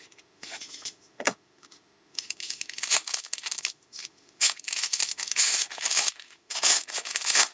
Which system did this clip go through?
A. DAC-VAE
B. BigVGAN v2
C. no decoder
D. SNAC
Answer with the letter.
A